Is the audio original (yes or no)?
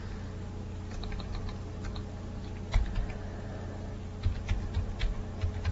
yes